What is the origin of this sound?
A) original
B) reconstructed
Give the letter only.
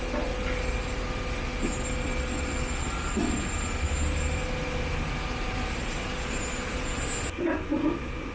A